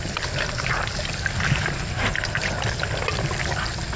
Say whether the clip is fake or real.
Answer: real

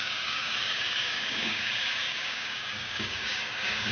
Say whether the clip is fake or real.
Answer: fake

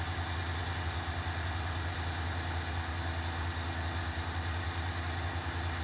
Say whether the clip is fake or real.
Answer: real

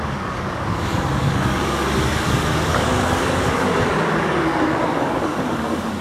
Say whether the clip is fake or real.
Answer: fake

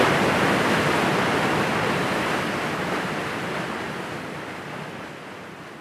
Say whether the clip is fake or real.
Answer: real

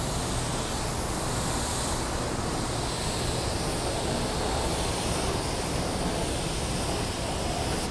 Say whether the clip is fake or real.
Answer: real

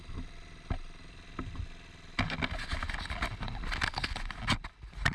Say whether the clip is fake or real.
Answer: real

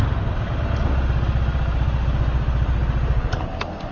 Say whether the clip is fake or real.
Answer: real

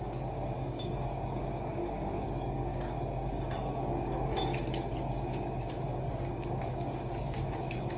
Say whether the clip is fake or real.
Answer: fake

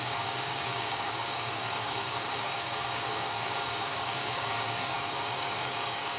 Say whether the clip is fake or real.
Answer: fake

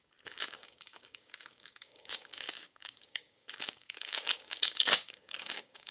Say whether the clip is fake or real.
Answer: fake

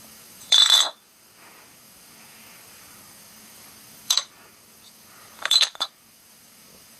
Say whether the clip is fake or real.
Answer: fake